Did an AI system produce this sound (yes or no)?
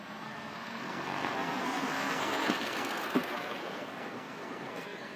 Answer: yes